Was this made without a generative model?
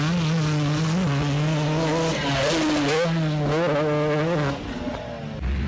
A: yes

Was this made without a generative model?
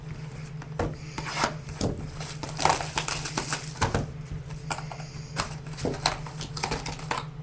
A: yes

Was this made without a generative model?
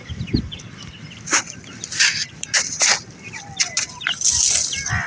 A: yes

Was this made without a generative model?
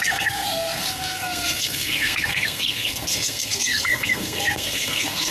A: no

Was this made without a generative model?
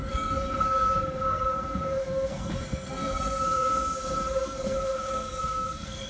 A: no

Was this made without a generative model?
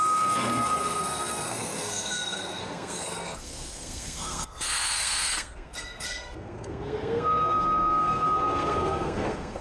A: no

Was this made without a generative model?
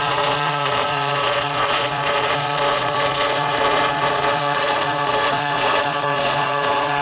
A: no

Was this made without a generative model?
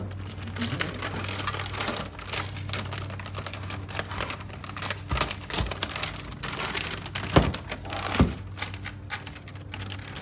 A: yes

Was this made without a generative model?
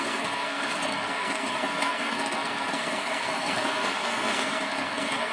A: no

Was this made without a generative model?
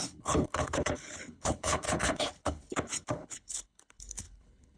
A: no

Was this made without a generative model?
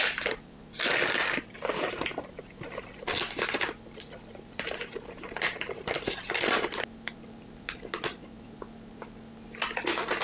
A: yes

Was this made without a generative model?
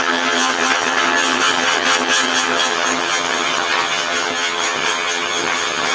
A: no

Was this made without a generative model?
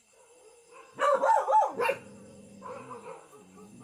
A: yes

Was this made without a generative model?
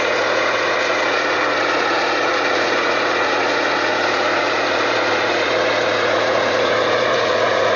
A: no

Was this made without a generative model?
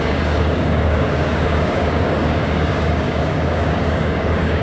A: no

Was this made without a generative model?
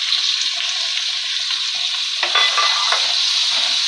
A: yes